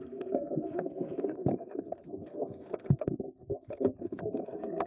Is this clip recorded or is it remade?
remade